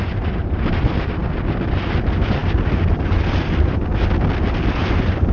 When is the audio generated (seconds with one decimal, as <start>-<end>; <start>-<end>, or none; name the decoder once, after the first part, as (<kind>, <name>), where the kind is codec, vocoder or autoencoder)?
0.0-3.9 (vocoder, BigVGAN v2); 4.7-5.3